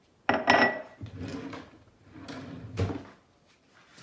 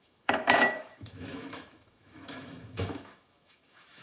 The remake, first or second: second